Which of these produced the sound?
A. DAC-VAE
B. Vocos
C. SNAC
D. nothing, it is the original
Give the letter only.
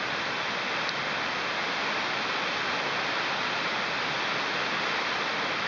D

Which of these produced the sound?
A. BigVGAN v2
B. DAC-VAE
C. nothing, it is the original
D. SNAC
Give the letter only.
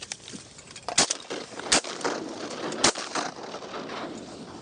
C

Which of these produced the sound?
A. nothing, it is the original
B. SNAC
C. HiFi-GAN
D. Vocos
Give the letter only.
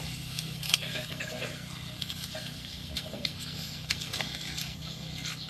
B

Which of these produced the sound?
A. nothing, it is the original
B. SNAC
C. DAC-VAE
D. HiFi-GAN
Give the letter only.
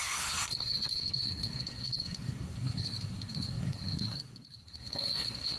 B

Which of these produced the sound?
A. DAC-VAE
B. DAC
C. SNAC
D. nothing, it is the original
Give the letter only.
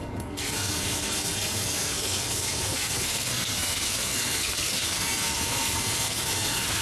C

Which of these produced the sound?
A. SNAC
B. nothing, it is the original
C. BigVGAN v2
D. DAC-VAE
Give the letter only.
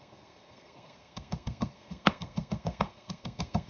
A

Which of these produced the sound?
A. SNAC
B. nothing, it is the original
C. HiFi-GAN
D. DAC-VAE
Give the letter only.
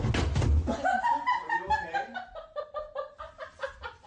B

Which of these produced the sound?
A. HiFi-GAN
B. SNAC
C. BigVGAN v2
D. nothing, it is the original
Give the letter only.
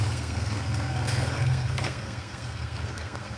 B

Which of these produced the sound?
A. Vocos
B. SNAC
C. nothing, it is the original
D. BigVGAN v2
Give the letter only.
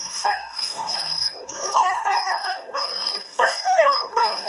B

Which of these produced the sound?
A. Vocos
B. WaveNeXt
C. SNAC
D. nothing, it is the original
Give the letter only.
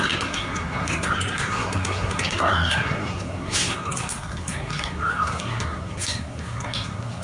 C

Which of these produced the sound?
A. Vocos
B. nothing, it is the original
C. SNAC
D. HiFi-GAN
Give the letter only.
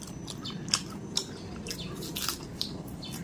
B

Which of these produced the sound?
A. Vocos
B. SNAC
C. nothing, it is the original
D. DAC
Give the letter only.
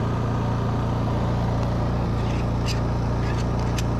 C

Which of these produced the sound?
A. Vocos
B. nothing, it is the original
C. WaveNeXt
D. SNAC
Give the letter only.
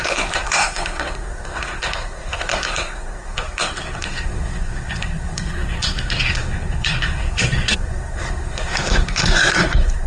D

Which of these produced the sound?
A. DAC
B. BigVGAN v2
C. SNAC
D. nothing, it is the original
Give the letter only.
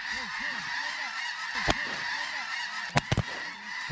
D